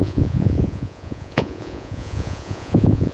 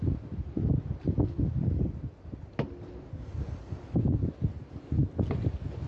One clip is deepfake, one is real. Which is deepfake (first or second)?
first